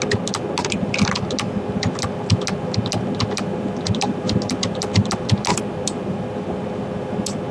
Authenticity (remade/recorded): recorded